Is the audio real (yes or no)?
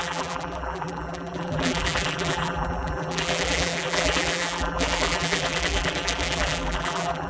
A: no